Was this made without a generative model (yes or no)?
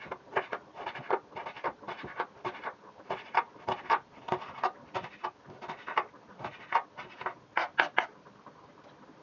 yes